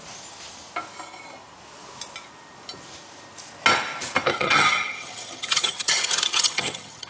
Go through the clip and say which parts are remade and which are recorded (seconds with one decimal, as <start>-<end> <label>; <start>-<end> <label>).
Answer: 0.0-4.3 recorded; 4.3-7.1 remade